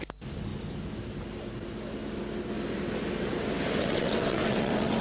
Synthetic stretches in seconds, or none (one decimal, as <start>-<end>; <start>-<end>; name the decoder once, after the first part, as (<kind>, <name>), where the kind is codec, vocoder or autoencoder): 3.8-5.0 (vocoder, WaveNeXt)